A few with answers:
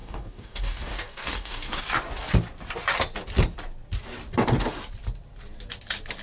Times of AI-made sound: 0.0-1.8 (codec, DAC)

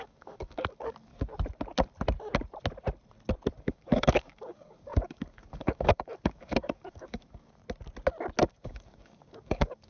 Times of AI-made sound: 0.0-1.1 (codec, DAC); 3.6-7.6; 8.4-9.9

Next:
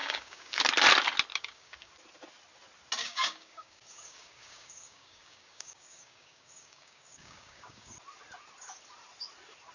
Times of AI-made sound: 0.0-0.6 (codec, DAC); 1.3-1.9; 3.0-7.9

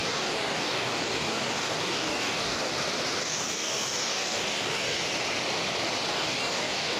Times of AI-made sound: 0.0-2.7 (codec, DAC); 3.2-5.0; 6.1-7.0